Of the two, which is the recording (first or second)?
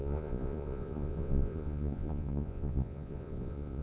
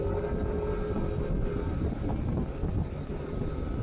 second